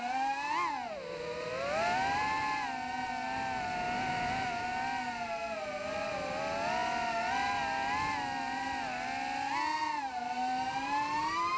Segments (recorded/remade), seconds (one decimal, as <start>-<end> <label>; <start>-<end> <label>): 0.0-9.8 recorded; 9.8-11.6 remade